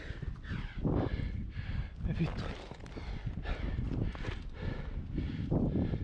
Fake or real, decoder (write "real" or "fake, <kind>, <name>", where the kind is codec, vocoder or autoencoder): real